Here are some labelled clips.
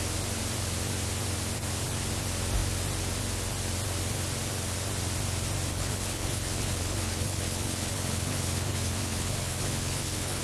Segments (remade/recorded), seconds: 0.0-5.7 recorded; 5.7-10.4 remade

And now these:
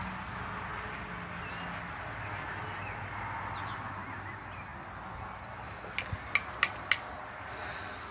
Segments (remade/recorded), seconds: 0.0-8.1 recorded

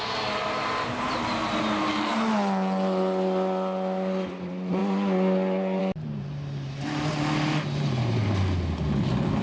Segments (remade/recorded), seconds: 0.0-9.4 recorded

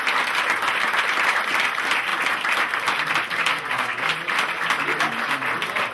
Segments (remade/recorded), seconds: 0.0-3.5 recorded; 3.5-4.1 remade; 4.1-5.9 recorded

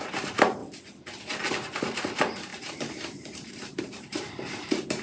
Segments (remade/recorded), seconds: 0.0-0.6 remade; 0.6-1.5 recorded; 1.5-5.0 remade

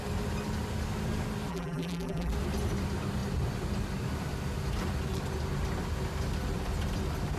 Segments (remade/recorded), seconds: 0.0-1.5 recorded; 1.5-2.3 remade; 2.3-7.4 recorded